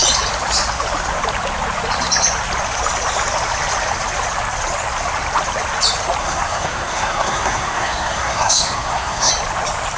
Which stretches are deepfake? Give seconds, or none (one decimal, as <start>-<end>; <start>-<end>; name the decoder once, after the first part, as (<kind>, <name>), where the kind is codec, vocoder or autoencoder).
6.2-9.3 (codec, SNAC)